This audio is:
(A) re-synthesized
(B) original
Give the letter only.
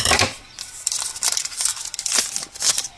A